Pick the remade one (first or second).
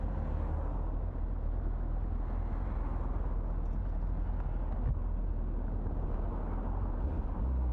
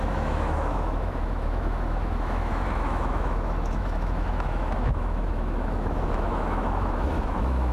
second